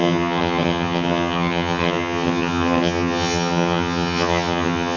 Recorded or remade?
remade